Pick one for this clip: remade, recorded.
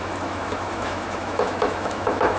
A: remade